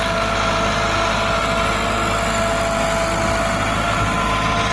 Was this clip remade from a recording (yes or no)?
no